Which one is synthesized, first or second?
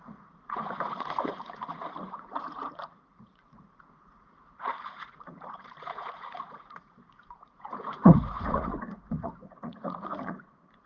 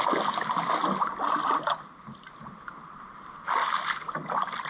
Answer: first